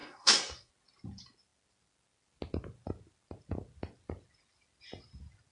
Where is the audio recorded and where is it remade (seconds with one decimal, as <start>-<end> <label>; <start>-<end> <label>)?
0.0-0.7 remade; 0.7-5.5 recorded